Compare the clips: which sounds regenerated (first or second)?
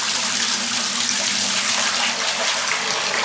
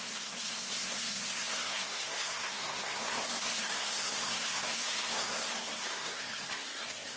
second